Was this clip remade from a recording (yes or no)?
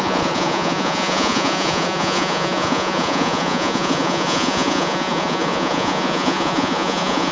yes